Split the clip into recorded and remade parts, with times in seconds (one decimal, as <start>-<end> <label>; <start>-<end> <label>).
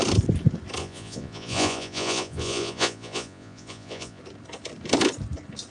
0.0-0.8 recorded; 0.8-4.2 remade; 4.2-5.7 recorded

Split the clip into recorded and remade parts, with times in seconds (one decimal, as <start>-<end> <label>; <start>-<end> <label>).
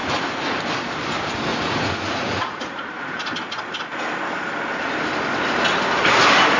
0.0-1.5 recorded; 1.5-2.9 remade; 2.9-6.6 recorded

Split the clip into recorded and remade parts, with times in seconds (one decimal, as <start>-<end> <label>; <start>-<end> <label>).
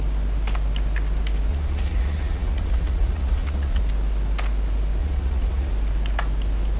0.0-1.5 recorded; 1.5-3.8 remade; 3.8-5.0 recorded; 5.0-5.7 remade; 5.7-6.8 recorded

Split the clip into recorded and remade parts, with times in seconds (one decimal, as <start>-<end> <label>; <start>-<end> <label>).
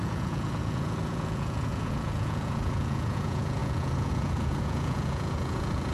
0.0-5.9 remade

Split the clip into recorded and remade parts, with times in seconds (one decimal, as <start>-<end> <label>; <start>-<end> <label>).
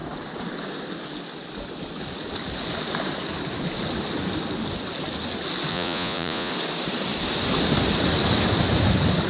0.0-5.7 recorded; 5.7-6.5 remade; 6.5-9.3 recorded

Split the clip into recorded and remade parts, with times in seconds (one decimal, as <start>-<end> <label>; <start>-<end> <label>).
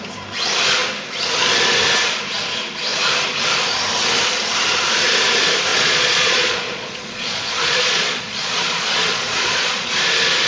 0.0-5.7 recorded; 5.7-9.9 remade; 9.9-10.5 recorded